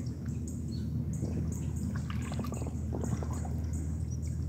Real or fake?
real